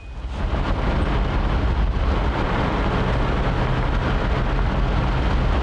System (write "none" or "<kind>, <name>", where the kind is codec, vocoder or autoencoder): none